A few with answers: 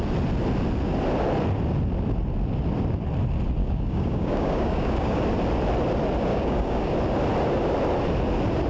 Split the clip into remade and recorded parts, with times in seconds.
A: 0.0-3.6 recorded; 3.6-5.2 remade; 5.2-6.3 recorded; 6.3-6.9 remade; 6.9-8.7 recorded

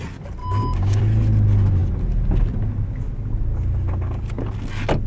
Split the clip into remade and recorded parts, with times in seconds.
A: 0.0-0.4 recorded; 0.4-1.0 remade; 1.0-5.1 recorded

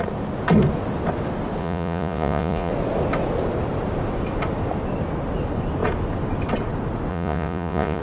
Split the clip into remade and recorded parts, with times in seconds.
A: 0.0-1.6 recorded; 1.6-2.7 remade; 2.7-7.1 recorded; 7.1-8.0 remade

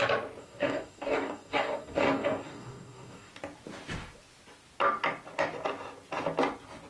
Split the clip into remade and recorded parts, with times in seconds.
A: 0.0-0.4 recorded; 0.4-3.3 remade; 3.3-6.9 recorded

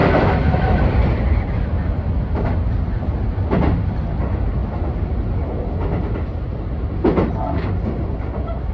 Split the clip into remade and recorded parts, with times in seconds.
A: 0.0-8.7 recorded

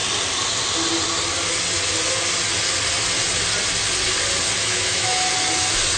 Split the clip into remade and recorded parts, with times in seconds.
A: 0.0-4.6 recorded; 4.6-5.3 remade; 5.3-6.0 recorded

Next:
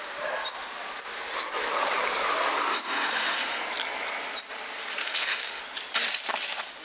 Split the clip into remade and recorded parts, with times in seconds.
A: 0.0-2.7 recorded; 2.7-3.6 remade; 3.6-5.0 recorded; 5.0-5.6 remade; 5.6-6.8 recorded